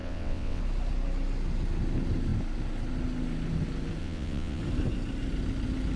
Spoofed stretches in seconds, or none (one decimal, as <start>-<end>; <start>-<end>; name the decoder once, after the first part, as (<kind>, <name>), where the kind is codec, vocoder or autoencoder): 0.0-0.6 (vocoder, WaveNeXt); 4.0-4.6